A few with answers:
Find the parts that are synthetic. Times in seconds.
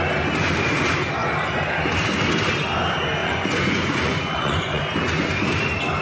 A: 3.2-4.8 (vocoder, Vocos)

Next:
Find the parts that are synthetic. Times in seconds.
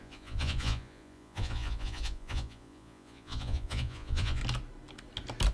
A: 0.0-4.4 (vocoder, Vocos)